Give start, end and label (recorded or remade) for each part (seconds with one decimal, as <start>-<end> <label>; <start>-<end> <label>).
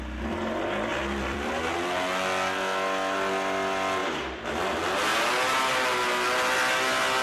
0.0-0.9 recorded; 0.9-1.5 remade; 1.5-4.0 recorded; 4.0-4.5 remade; 4.5-7.2 recorded